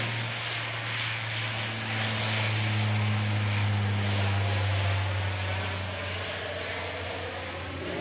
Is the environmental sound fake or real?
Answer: real